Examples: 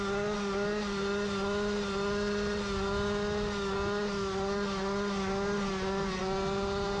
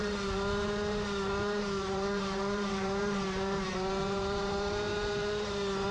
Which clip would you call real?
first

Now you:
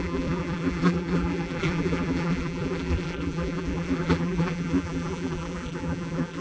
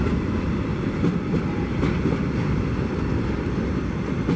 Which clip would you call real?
second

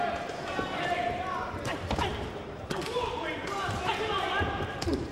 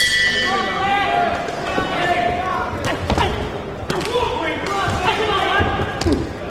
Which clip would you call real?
second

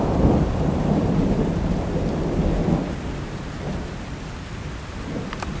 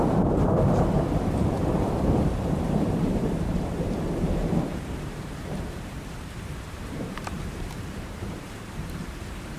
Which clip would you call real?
first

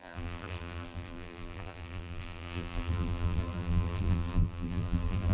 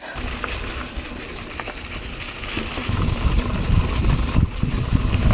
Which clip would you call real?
second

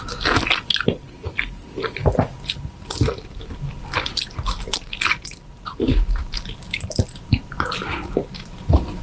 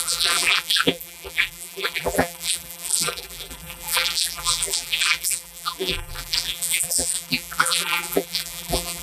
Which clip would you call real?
first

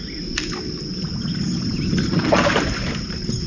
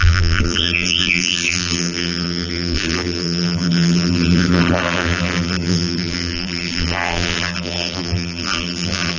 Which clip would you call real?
first